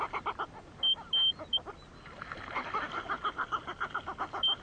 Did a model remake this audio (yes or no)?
no